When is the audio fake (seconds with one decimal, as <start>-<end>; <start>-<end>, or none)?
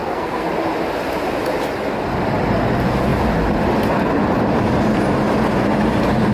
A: 0.0-0.5